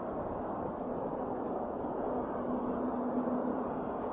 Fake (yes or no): no